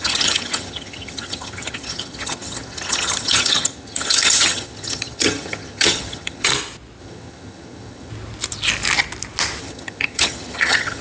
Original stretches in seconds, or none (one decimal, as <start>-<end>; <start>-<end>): 6.5-7.0; 8.1-9.6

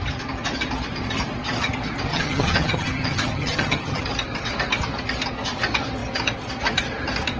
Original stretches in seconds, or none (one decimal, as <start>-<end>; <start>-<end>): 0.0-2.1; 4.0-7.4

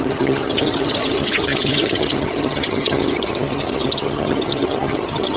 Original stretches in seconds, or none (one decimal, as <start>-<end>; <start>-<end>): none

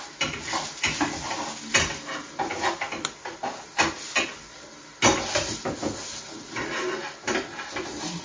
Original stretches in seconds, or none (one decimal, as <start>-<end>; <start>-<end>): 0.0-8.2

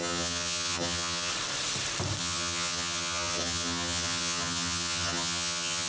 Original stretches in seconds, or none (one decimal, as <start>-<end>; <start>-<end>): 1.3-2.2

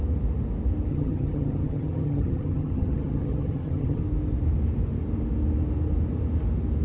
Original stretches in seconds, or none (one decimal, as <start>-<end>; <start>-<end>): 0.0-0.9; 4.0-6.8

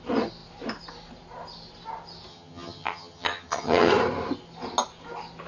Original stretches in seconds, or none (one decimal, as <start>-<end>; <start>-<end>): 0.0-2.3; 3.9-5.5

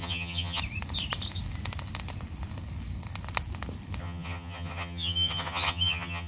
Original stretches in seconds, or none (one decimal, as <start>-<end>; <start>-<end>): 0.6-4.0